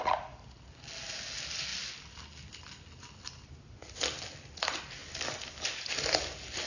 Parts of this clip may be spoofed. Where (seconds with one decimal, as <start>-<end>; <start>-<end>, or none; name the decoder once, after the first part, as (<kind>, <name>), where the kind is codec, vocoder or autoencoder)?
none